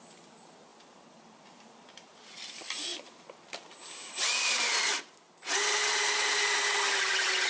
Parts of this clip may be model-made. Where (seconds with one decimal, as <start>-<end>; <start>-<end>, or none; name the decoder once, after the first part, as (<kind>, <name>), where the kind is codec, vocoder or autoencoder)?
none